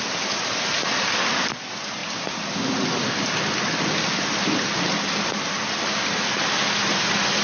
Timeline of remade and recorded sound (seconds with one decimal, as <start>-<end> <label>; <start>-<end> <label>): 0.0-7.4 recorded